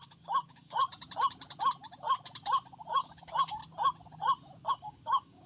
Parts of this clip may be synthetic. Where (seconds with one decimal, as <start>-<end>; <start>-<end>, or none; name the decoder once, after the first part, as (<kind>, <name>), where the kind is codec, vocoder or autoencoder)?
0.0-0.8 (codec, DAC); 2.9-3.6; 4.7-5.5